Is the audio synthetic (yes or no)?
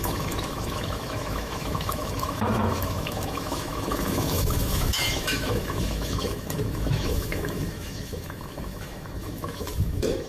yes